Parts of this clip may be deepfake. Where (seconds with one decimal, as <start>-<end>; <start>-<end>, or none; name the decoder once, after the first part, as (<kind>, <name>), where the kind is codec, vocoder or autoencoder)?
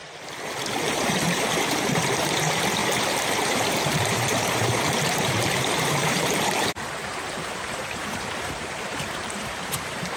0.8-10.2 (vocoder, BigVGAN v2)